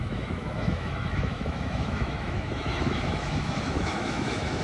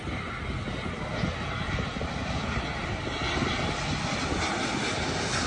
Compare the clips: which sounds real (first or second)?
second